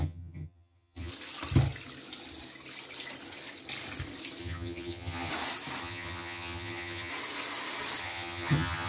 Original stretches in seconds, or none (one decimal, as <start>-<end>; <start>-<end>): 1.1-4.4; 5.3-5.8; 7.1-8.0